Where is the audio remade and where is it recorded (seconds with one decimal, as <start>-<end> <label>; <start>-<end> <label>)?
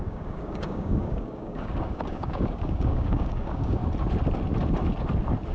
0.0-3.8 remade; 3.8-5.5 recorded